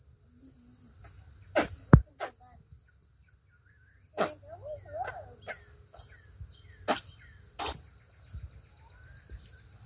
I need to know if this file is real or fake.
real